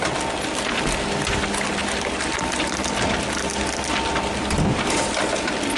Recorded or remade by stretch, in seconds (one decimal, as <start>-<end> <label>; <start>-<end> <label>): 0.0-5.8 recorded